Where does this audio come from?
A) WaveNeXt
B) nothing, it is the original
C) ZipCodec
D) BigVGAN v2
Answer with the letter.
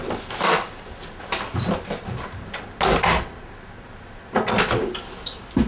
B